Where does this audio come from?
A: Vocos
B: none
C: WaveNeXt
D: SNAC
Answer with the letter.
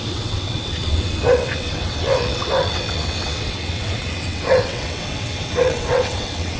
C